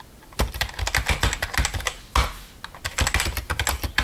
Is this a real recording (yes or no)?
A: yes